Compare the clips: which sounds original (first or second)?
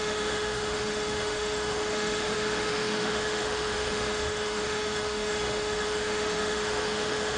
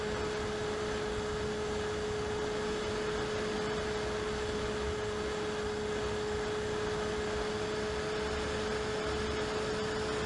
second